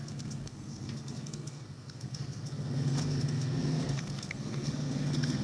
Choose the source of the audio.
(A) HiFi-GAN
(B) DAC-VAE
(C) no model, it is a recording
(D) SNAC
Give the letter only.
D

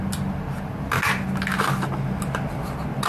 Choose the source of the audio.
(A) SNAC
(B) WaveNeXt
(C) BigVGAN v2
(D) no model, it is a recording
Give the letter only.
D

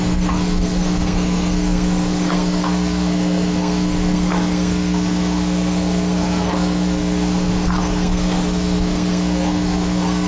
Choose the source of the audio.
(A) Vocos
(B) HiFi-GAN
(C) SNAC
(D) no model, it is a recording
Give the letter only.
C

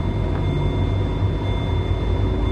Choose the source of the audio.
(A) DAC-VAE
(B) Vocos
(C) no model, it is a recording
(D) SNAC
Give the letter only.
C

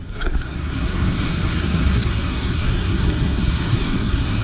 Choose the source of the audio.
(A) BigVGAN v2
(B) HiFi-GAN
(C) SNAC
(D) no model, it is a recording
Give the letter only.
C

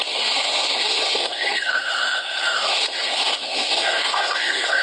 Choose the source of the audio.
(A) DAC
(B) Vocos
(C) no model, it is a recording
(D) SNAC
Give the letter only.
D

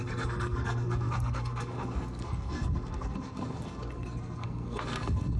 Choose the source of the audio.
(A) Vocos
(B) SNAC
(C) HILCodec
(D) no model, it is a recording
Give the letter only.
B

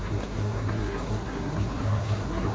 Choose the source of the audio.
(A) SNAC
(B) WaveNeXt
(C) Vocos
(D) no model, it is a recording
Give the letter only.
A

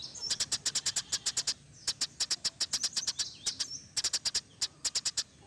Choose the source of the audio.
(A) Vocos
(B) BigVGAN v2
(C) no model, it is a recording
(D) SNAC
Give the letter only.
C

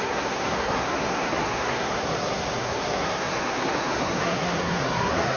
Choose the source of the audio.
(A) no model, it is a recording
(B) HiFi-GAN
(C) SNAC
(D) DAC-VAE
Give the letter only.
C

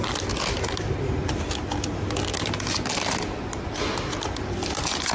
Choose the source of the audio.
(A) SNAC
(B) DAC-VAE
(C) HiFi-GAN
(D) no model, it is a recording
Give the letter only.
D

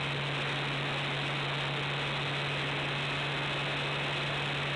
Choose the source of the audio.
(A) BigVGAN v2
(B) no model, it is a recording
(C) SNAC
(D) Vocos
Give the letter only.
B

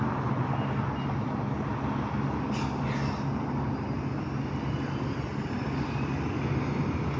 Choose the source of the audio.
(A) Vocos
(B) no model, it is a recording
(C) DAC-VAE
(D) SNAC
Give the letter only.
B